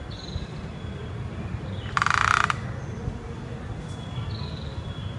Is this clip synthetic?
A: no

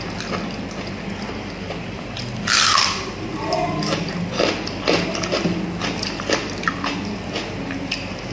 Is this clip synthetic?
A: no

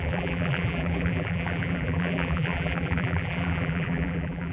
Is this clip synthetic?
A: yes